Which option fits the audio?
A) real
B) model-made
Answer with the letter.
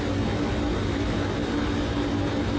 A